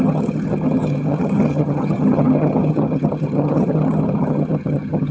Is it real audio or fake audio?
fake